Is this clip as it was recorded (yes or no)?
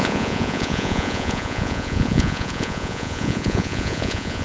no